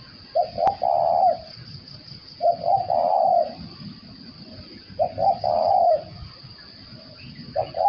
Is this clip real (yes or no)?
yes